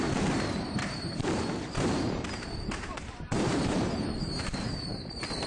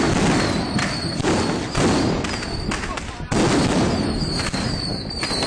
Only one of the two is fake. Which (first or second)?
first